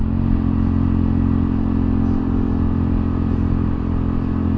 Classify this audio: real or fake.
real